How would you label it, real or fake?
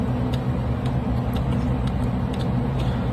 real